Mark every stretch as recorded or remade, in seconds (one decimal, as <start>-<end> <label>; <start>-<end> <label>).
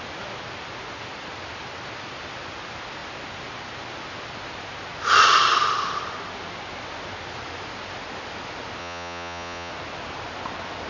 0.0-8.8 recorded; 8.8-9.7 remade; 9.7-10.9 recorded